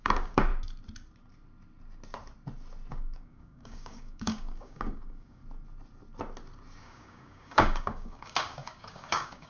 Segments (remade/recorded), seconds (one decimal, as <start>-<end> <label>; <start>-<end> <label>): 0.0-0.5 remade; 0.5-2.9 recorded; 2.9-5.4 remade; 5.4-6.8 recorded; 6.8-9.5 remade